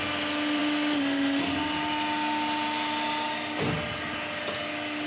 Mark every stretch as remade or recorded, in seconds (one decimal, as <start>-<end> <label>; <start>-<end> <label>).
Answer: 0.0-5.1 recorded